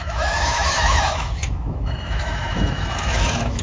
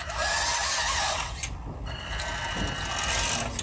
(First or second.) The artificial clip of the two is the first